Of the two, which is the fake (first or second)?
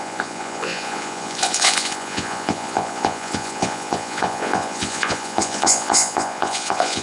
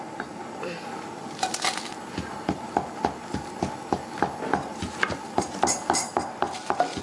first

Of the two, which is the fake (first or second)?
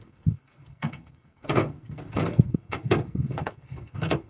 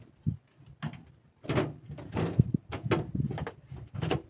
first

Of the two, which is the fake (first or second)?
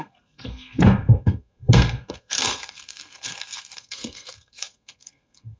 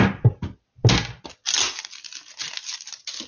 first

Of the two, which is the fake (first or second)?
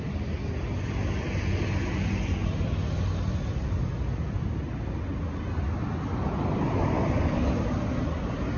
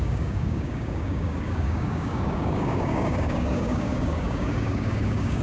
second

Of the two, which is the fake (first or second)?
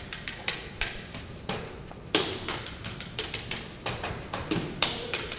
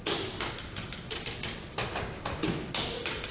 first